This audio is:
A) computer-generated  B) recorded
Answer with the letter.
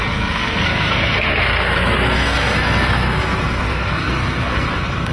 A